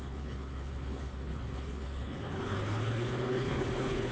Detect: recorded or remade remade